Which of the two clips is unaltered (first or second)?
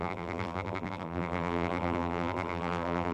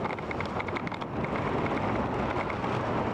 second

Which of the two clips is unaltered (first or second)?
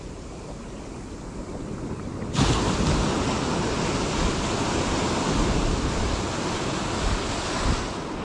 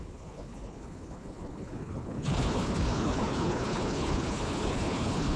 first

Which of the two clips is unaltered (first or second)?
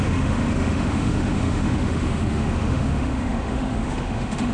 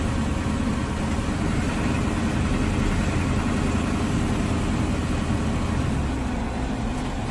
second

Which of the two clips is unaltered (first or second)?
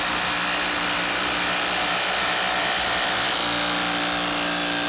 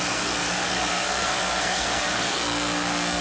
first